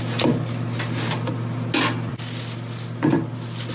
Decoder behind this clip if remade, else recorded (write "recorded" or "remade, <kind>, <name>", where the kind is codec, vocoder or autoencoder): recorded